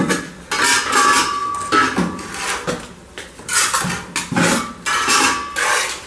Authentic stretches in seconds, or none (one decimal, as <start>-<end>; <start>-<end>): 0.0-6.1